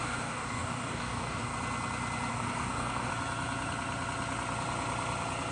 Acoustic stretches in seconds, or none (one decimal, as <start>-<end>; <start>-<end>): 1.5-2.3; 3.1-5.5